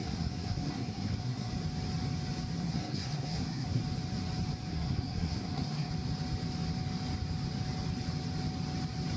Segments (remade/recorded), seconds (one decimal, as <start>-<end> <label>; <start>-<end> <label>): 0.0-1.5 remade; 1.5-2.6 recorded; 2.6-3.8 remade; 3.8-4.7 recorded; 4.7-5.9 remade; 5.9-9.2 recorded

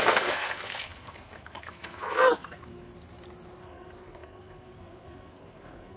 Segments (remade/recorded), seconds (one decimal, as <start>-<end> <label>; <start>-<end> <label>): 0.0-2.9 remade; 2.9-3.6 recorded; 3.6-6.0 remade

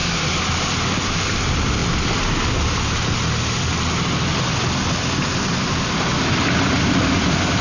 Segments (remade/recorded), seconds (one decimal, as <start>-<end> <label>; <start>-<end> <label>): 0.0-7.6 recorded

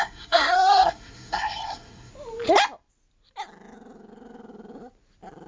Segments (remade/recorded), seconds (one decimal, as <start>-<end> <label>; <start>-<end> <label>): 0.0-2.1 remade; 2.1-5.5 recorded

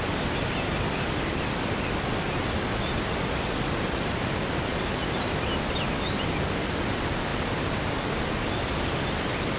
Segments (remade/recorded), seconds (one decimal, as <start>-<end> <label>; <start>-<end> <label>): 0.0-9.6 recorded